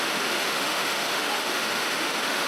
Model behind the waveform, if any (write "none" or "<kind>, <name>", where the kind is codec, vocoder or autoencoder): autoencoder, DAC-VAE